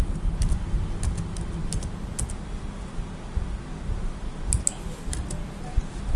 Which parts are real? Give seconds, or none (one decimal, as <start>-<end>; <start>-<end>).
0.0-6.2

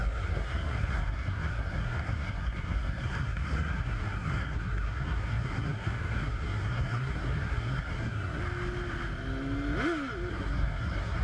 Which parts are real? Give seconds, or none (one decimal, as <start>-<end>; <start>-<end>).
8.4-10.3

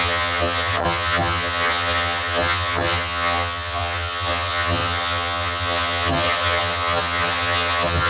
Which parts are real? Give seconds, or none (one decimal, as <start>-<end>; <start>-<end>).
none

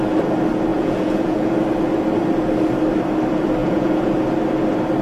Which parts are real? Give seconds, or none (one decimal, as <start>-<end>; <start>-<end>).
0.0-0.7; 1.5-3.6; 4.1-5.0